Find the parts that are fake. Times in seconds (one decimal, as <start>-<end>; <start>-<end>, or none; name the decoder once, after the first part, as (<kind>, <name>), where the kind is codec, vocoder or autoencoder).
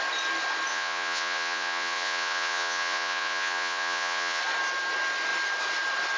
0.7-4.4 (vocoder, Vocos)